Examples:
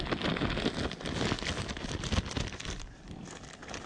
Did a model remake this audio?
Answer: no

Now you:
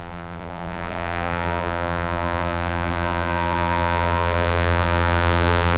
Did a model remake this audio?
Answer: yes